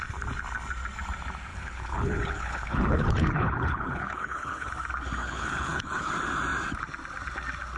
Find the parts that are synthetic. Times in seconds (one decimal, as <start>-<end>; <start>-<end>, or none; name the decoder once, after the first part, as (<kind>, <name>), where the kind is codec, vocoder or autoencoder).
1.5-4.7 (codec, HILCodec); 5.2-6.1